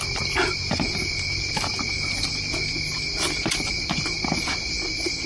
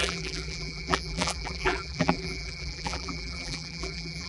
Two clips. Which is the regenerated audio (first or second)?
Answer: second